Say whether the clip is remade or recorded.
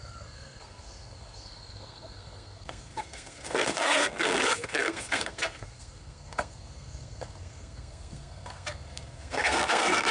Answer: remade